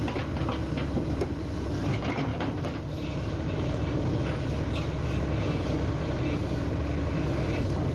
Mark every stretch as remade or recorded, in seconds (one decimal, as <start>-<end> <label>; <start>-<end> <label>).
0.0-7.9 recorded